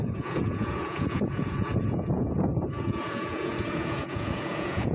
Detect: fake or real fake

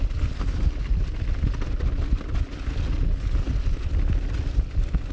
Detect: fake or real real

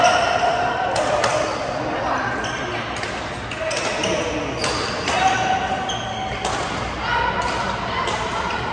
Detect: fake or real real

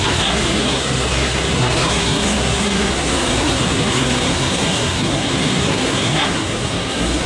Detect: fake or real fake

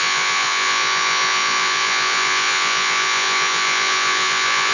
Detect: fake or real fake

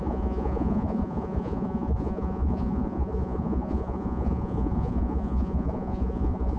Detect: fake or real fake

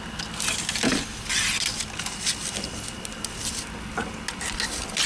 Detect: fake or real real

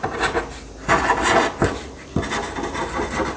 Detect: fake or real real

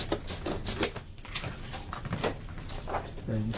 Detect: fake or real real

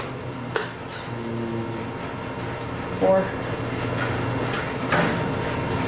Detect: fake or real real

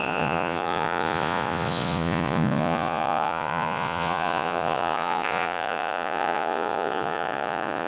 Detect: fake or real fake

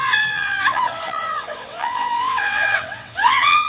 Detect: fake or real fake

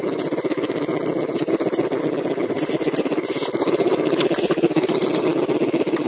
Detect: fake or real real